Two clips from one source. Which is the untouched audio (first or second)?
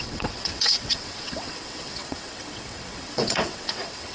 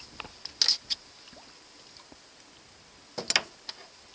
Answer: second